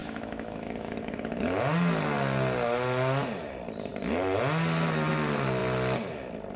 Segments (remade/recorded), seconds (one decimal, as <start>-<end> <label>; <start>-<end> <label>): 0.0-1.6 remade; 1.6-6.6 recorded